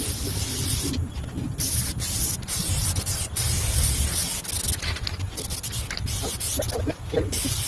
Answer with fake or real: real